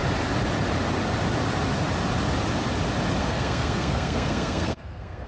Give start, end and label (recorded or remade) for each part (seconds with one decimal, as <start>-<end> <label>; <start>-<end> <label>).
0.0-3.2 recorded; 3.2-5.3 remade